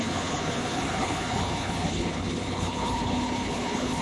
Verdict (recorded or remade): remade